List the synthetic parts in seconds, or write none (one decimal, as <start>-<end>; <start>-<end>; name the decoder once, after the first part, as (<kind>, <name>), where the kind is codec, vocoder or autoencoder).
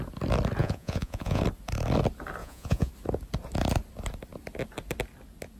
0.6-1.4 (vocoder, Vocos); 2.4-2.9